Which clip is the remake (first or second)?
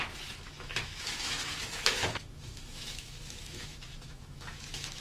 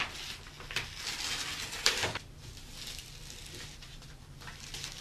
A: first